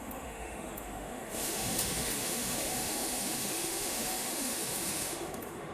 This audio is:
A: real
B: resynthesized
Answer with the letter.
B